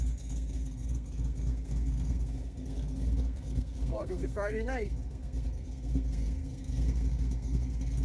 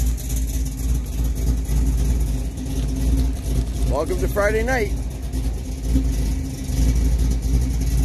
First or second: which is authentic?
second